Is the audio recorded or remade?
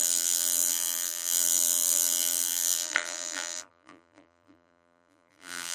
remade